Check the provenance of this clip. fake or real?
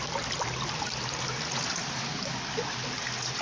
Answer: real